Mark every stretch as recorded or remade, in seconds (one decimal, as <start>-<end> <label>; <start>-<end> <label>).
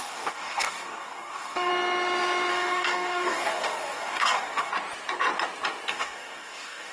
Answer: 0.0-1.7 remade; 1.7-2.5 recorded; 2.5-4.7 remade; 4.7-5.9 recorded; 5.9-6.9 remade